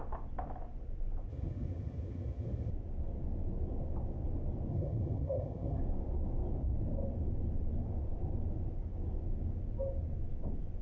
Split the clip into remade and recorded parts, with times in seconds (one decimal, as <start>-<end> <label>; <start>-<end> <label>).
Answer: 0.0-1.3 recorded; 1.3-2.7 remade; 2.7-4.7 recorded; 4.7-5.8 remade; 5.8-10.8 recorded